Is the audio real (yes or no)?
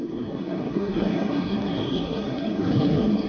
no